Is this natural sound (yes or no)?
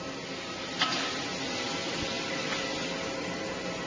yes